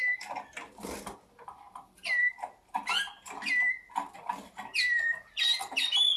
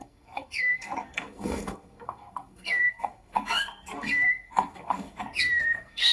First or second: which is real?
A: first